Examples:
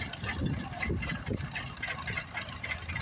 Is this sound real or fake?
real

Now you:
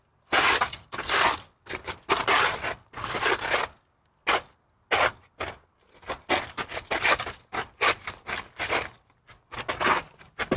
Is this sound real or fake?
real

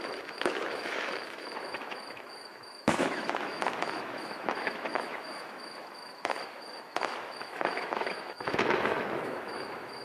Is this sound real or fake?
fake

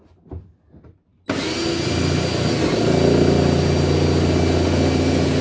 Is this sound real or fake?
real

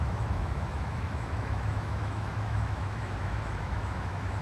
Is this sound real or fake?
fake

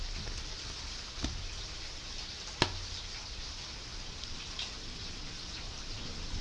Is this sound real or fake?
real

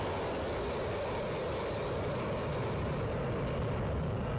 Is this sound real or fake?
real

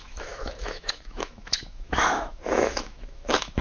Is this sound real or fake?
fake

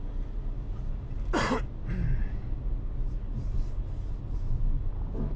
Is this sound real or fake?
real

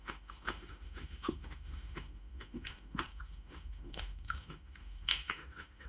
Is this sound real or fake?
fake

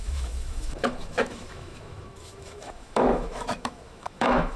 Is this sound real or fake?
fake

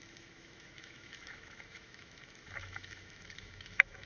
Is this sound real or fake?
fake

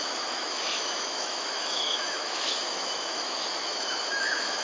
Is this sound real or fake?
fake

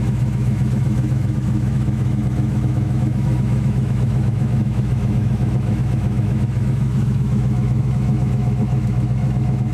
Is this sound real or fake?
fake